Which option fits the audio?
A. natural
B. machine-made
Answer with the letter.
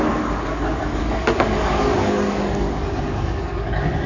B